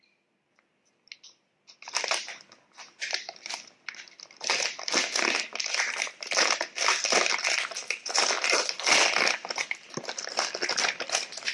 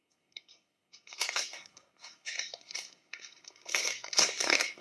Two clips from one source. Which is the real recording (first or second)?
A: first